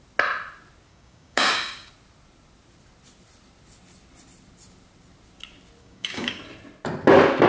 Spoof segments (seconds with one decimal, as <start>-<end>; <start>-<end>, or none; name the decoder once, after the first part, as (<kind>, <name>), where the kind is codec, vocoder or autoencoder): 0.9-1.9 (codec, DAC); 5.8-6.4